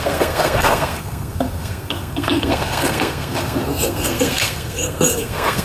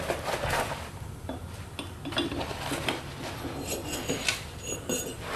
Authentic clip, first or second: second